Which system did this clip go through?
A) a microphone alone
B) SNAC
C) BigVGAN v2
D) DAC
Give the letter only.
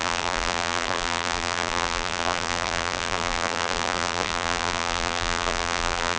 C